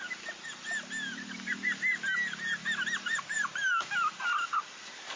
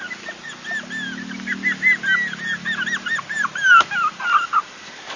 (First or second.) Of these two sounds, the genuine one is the second